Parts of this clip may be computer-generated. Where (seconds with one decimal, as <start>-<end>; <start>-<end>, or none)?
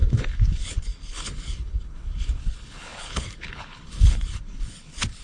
0.0-5.2